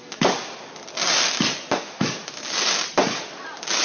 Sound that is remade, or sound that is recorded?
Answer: recorded